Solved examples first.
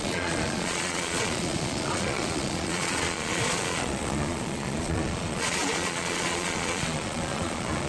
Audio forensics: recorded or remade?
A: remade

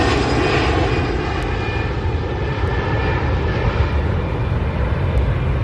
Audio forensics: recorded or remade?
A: recorded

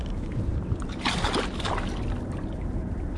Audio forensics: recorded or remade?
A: recorded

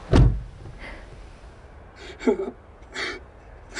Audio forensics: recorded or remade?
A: recorded